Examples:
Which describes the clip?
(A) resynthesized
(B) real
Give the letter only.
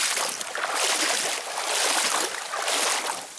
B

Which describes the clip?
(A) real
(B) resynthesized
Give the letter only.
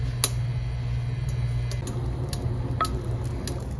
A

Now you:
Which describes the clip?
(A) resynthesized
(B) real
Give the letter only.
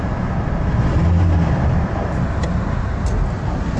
B